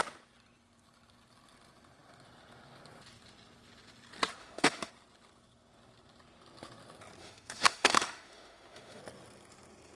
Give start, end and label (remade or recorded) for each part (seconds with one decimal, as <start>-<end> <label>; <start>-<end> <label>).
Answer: 0.0-4.4 recorded; 4.4-4.9 remade; 4.9-7.2 recorded; 7.2-9.0 remade; 9.0-9.9 recorded